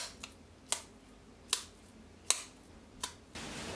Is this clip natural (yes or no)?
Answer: yes